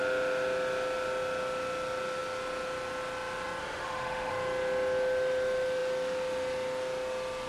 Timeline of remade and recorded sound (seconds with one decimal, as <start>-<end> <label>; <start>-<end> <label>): 0.0-3.6 recorded; 3.6-4.3 remade; 4.3-7.5 recorded